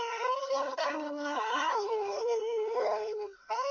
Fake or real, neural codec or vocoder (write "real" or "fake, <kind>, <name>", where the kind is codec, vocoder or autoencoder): fake, codec, SNAC